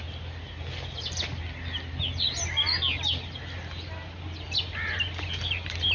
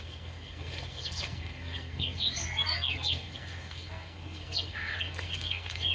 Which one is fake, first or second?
second